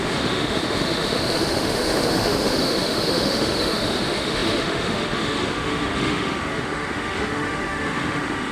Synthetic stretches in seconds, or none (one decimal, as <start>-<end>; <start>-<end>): 0.0-8.5